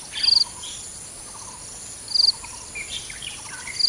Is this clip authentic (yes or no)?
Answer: yes